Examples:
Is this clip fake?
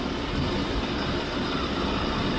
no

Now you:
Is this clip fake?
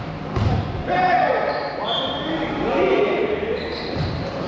yes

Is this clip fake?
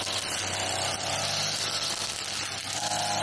no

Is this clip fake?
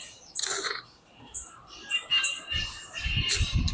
yes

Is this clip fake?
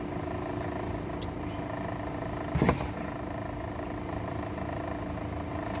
no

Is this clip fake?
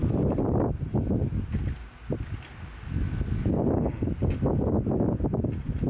no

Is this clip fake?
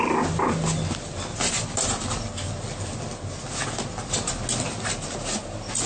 no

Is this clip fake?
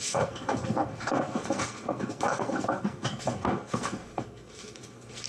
yes